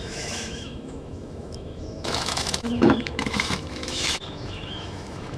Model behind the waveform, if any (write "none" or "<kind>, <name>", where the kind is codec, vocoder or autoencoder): autoencoder, DAC-VAE